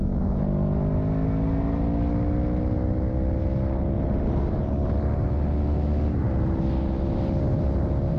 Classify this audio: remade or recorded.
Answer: recorded